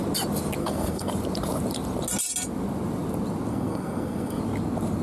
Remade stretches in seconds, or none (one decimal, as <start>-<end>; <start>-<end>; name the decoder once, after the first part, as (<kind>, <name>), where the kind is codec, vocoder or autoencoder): 0.6-1.1 (codec, SNAC); 3.5-4.4